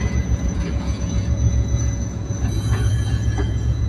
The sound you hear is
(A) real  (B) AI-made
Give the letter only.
B